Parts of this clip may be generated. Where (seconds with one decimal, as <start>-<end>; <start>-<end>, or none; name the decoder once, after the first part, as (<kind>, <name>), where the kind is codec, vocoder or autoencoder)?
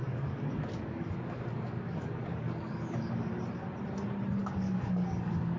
0.0-3.4 (codec, DAC); 4.4-5.6